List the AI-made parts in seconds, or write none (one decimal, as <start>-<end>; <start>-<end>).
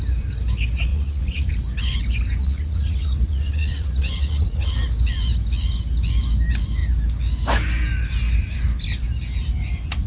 0.9-1.5; 2.4-4.7